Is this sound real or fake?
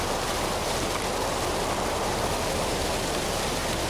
real